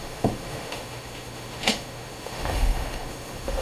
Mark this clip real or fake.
fake